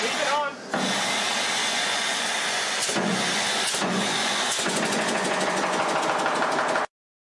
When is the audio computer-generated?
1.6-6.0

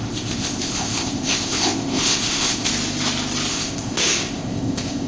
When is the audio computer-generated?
0.0-2.7; 3.5-5.1

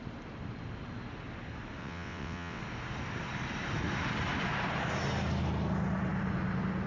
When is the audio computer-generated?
1.8-2.6

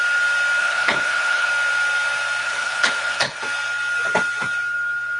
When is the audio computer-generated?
0.6-1.5; 2.4-3.4

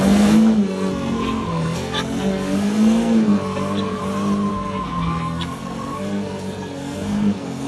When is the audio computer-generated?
0.0-4.0; 4.5-7.7

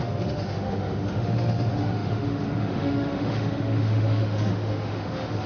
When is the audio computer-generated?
0.0-5.5

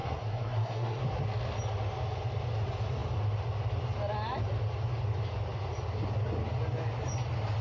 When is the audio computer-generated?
0.0-1.0